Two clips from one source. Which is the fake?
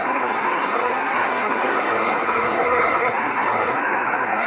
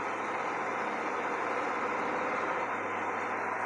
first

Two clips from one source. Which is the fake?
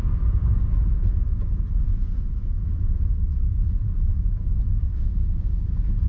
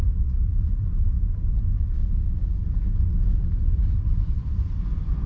first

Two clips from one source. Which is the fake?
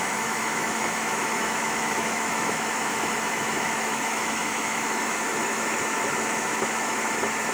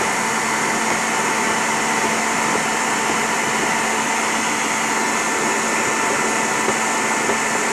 first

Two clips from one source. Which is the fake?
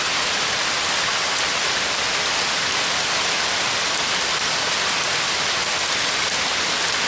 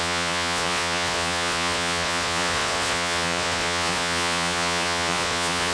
second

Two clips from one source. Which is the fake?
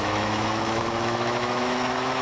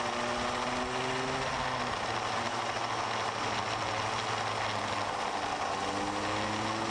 first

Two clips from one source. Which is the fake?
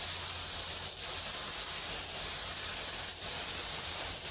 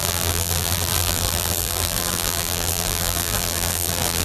second